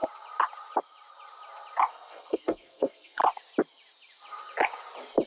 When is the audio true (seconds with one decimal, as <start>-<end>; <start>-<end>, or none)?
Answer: 0.0-1.9; 3.2-5.3